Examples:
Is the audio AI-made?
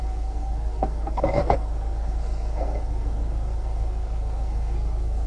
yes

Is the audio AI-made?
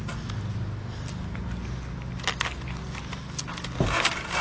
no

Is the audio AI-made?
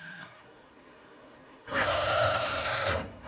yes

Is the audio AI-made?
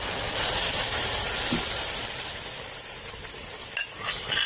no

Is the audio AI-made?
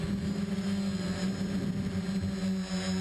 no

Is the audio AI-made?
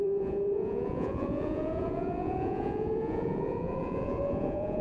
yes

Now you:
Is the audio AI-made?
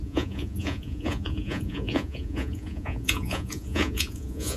yes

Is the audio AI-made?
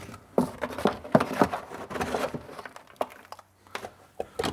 yes